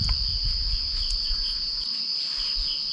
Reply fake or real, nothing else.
real